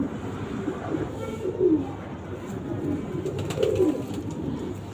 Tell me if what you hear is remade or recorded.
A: recorded